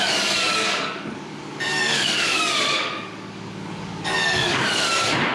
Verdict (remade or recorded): remade